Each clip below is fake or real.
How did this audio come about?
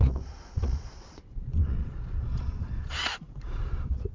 fake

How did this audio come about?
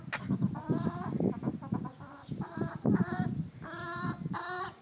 real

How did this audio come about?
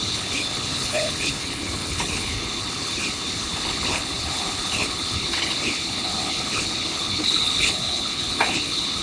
fake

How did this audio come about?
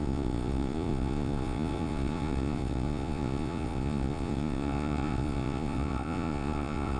fake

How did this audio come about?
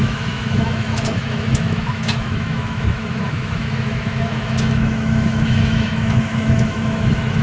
fake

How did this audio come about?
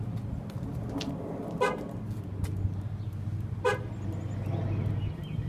real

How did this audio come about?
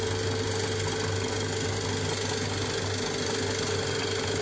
real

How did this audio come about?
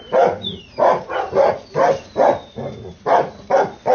real